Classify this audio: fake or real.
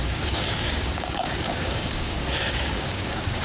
fake